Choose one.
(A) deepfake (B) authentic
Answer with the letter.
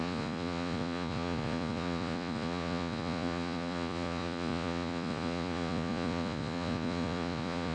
A